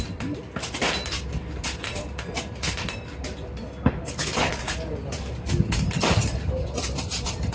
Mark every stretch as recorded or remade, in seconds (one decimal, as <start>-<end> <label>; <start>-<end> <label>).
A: 0.0-4.0 recorded; 4.0-4.6 remade; 4.6-7.5 recorded